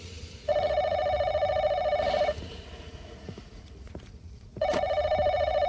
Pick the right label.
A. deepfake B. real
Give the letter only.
A